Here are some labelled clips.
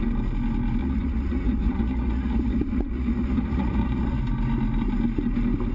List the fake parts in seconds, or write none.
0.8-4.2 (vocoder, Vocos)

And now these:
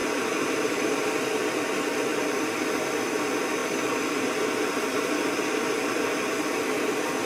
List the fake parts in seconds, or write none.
0.0-1.4 (vocoder, BigVGAN v2); 2.1-2.6

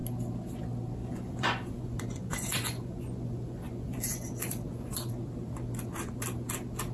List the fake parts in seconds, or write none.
1.0-5.1 (vocoder, Vocos)

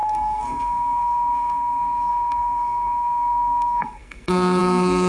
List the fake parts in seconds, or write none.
0.0-5.1 (codec, SNAC)